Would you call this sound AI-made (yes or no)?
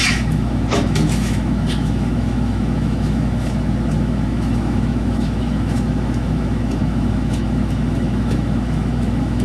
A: yes